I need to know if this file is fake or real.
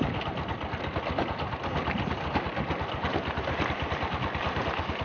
real